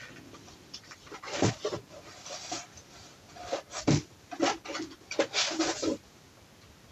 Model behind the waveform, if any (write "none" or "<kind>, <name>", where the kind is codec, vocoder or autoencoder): none